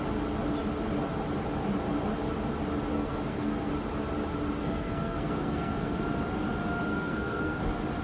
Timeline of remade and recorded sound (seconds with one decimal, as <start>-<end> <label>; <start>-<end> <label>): 0.0-2.9 recorded; 2.9-3.7 remade; 3.7-4.6 recorded; 4.6-6.0 remade; 6.0-6.9 recorded; 6.9-7.6 remade; 7.6-8.0 recorded